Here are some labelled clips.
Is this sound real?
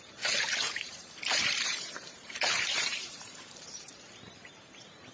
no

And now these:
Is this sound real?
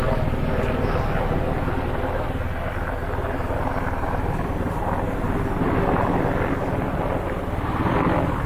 no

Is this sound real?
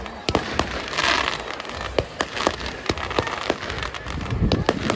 yes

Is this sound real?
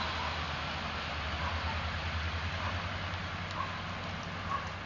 yes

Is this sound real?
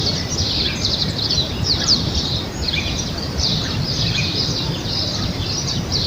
no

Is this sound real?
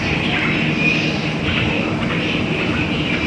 no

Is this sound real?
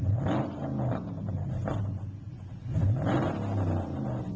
yes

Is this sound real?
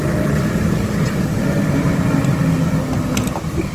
yes